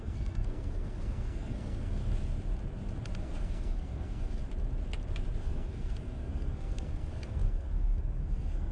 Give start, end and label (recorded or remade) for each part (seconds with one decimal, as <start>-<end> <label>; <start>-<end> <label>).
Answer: 0.0-2.0 remade; 2.0-3.2 recorded; 3.2-4.4 remade; 4.4-5.4 recorded; 5.4-8.7 remade